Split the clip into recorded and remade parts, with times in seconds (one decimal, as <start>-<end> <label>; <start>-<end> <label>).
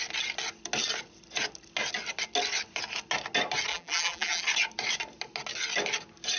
0.0-3.7 recorded; 3.7-4.4 remade; 4.4-6.4 recorded